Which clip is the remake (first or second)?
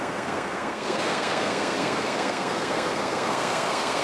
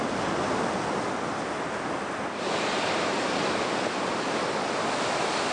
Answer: first